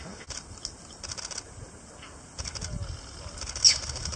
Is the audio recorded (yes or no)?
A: yes